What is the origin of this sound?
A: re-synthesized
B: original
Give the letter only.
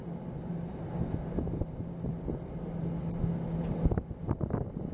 B